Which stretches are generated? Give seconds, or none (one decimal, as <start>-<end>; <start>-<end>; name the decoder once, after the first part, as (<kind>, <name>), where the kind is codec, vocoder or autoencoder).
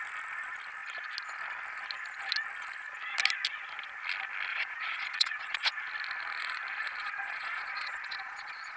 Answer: 4.5-5.7 (vocoder, Vocos); 7.0-8.8